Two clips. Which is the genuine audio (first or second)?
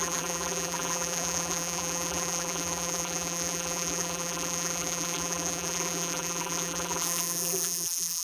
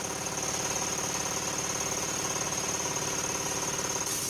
second